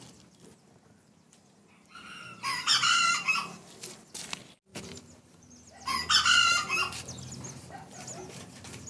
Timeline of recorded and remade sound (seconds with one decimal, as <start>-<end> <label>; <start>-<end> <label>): 0.0-4.7 recorded; 4.7-5.5 remade; 5.5-8.9 recorded